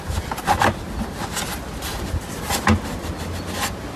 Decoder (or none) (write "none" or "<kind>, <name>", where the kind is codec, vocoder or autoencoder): none